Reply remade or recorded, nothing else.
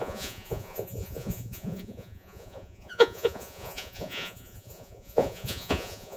remade